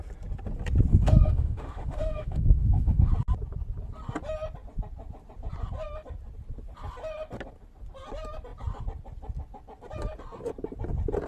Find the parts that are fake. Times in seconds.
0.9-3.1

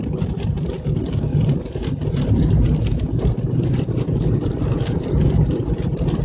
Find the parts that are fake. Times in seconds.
none

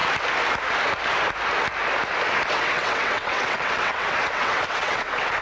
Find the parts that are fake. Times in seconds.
2.5-5.4